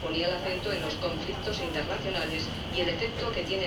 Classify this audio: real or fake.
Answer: real